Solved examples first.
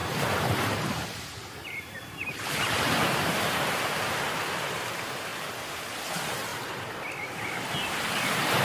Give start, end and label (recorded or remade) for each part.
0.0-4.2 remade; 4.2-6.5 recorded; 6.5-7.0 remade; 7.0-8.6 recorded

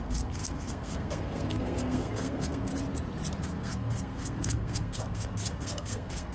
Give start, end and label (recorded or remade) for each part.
0.0-2.7 remade; 2.7-3.4 recorded; 3.4-6.3 remade

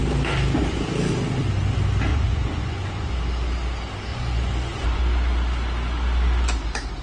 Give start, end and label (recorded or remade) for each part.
0.0-2.1 recorded; 2.1-3.1 remade; 3.1-4.1 recorded; 4.1-5.0 remade; 5.0-7.0 recorded

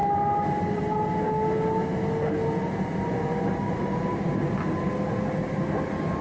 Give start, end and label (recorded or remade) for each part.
0.0-2.4 recorded; 2.4-4.9 remade; 4.9-6.2 recorded